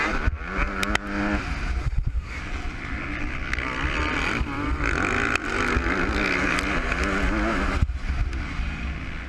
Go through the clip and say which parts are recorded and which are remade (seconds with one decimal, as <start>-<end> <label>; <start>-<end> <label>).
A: 0.0-1.8 recorded; 1.8-2.4 remade; 2.4-9.3 recorded